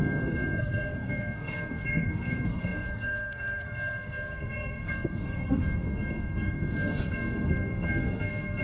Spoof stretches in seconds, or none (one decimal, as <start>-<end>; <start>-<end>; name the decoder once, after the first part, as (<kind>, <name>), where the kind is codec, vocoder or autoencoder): 0.0-8.6 (codec, SNAC)